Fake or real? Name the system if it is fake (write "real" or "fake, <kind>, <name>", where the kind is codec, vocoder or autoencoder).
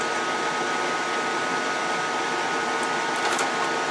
real